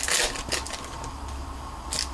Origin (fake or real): real